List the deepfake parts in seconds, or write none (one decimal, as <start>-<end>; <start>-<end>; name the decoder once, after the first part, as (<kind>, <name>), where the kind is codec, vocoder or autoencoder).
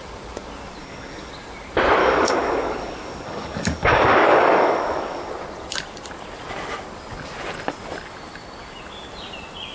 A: 0.8-1.3 (codec, DAC); 2.0-5.3